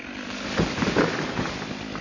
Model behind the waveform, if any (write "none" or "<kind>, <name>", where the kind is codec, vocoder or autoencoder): none